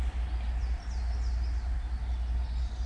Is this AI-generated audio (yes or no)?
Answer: no